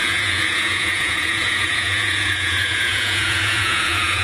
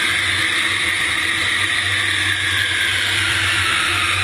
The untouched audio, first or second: second